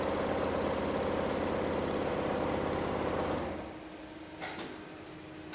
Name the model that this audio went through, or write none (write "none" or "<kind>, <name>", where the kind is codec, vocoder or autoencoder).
none